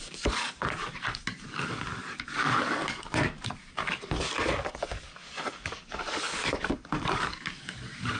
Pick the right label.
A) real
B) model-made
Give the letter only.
B